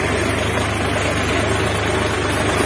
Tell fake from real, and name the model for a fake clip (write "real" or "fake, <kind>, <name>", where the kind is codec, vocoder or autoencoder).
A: real